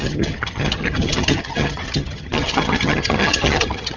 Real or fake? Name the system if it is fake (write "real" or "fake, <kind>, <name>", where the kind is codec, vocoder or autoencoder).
fake, vocoder, HiFi-GAN